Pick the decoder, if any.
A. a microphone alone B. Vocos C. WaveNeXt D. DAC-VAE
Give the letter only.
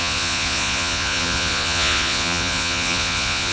B